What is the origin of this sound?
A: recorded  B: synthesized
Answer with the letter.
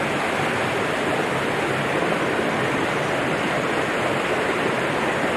A